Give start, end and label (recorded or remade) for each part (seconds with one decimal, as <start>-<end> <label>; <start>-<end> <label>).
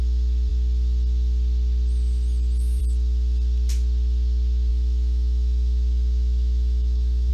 0.0-4.7 recorded; 4.7-7.3 remade